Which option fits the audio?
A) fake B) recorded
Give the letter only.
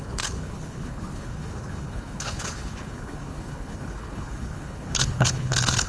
A